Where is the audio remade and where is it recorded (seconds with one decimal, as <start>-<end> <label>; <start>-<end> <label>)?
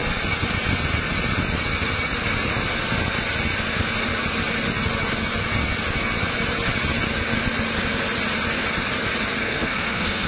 0.0-9.4 recorded; 9.4-10.3 remade